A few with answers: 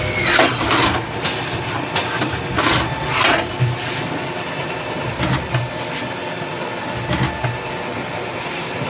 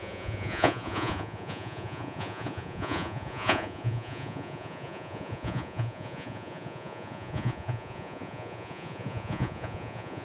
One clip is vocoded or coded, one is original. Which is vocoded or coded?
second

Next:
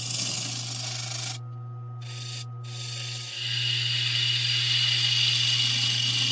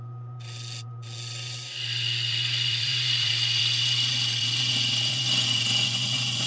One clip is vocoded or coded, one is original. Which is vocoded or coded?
second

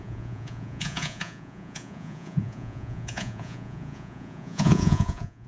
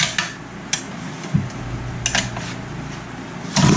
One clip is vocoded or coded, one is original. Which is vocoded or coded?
first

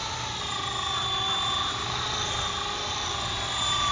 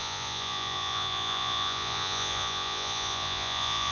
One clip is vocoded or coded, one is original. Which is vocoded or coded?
second